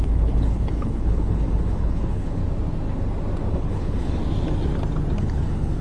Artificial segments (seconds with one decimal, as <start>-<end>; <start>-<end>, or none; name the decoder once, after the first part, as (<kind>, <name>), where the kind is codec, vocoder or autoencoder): 0.0-2.4 (codec, HILCodec); 3.5-4.2; 5.2-5.8